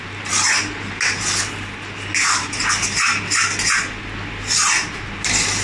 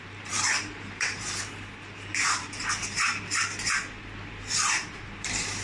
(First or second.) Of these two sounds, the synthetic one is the second